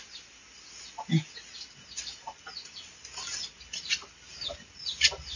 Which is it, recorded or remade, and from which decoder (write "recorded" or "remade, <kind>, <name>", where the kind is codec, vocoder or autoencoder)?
recorded